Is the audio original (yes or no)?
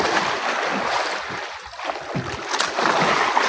yes